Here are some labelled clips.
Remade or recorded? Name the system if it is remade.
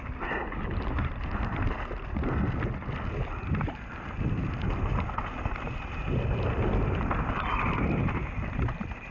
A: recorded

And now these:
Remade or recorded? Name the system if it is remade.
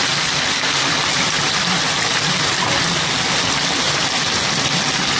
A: recorded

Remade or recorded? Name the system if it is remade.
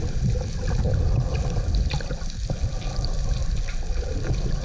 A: recorded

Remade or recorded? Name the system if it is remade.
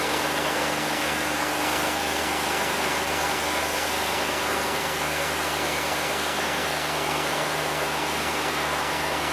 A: remade, codec, SNAC